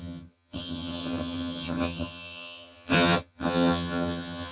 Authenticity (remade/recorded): remade